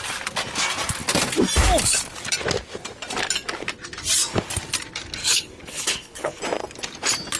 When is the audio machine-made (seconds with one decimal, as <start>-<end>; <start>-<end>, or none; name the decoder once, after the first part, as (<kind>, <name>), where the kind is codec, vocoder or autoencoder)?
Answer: 5.2-6.4 (codec, HILCodec)

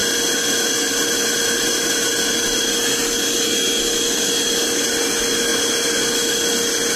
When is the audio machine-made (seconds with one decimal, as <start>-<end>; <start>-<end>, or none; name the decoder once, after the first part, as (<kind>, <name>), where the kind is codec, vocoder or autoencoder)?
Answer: none

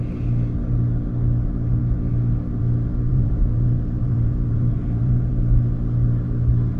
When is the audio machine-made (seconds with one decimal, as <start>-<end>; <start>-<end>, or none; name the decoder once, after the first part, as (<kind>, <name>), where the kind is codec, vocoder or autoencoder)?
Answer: 3.1-5.3 (vocoder, BigVGAN v2)

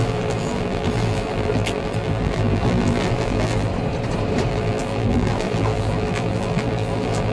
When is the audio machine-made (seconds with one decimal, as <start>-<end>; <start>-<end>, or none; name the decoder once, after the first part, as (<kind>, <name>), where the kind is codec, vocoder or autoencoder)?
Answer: 0.0-3.7 (vocoder, BigVGAN v2); 4.5-7.3

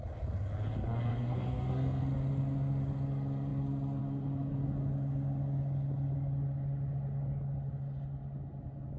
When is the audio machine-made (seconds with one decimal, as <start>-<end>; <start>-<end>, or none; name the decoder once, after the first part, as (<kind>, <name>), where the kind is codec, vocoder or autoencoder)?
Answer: 1.1-2.0 (codec, SNAC)

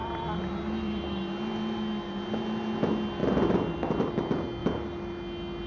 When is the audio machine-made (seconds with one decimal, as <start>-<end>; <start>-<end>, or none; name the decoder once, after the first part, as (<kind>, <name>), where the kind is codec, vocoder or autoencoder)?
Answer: 0.0-1.4 (vocoder, BigVGAN v2); 3.2-4.1

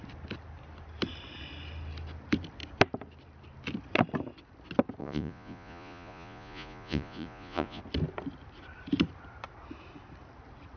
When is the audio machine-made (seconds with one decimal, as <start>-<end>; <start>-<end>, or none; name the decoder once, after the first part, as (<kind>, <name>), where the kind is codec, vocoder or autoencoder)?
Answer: 5.0-7.8 (vocoder, Vocos)